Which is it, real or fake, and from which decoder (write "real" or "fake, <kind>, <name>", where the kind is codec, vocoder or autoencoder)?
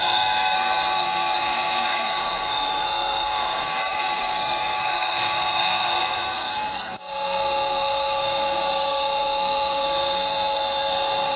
fake, codec, SNAC